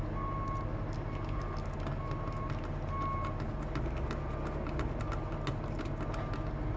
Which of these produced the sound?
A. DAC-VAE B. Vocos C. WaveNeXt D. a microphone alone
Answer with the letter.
D